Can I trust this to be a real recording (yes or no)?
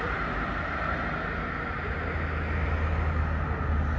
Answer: yes